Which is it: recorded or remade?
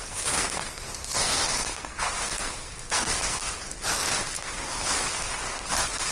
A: remade